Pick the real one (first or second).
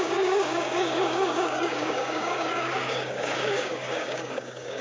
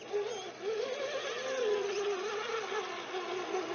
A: second